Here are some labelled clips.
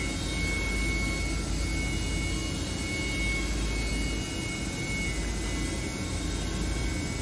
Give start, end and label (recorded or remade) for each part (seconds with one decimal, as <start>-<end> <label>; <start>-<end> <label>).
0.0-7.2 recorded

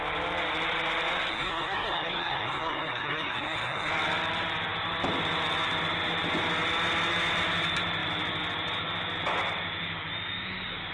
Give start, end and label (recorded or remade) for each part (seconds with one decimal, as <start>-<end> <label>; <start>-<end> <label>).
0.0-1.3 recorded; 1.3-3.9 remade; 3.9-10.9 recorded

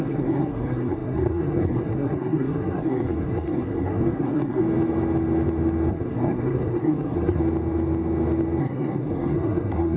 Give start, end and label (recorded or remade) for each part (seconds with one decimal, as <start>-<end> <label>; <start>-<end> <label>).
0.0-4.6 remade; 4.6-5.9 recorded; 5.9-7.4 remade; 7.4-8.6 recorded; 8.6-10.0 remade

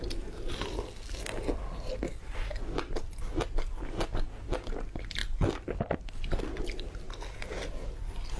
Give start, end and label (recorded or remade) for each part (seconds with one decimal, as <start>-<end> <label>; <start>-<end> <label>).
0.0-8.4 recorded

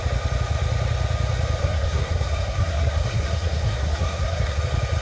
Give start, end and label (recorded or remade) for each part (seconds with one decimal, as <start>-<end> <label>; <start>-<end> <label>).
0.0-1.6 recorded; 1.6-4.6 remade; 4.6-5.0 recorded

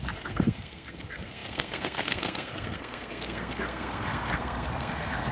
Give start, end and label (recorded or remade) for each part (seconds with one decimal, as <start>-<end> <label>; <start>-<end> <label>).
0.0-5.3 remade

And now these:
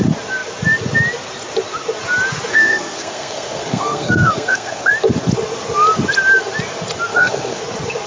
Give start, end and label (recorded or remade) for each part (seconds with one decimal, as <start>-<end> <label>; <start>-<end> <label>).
0.0-2.5 recorded; 2.5-4.9 remade; 4.9-7.1 recorded; 7.1-7.6 remade; 7.6-8.1 recorded

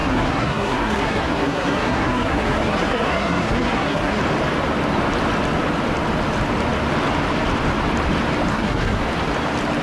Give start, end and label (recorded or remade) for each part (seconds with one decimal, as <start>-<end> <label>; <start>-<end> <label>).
0.0-4.2 remade; 4.2-8.5 recorded; 8.5-9.0 remade; 9.0-9.8 recorded